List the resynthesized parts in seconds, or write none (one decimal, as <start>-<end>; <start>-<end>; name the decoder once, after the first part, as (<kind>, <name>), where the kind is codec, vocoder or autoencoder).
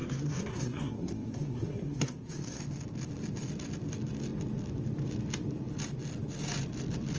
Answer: 0.0-2.6 (codec, SNAC)